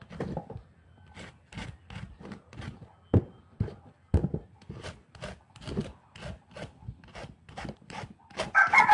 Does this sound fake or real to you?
real